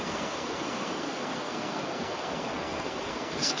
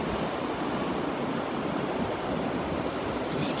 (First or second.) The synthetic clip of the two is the first